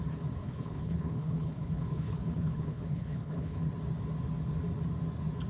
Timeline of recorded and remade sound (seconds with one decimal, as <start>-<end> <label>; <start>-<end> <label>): 0.0-0.4 recorded; 0.4-3.7 remade; 3.7-5.5 recorded